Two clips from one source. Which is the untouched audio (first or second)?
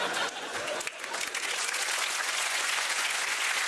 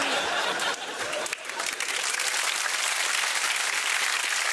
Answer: second